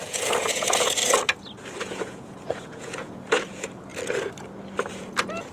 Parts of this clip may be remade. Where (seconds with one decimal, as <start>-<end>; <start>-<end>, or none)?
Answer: 0.0-1.0; 1.8-3.9; 4.9-5.5